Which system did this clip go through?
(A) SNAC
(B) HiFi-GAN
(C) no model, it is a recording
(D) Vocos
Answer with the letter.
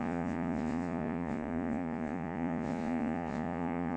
D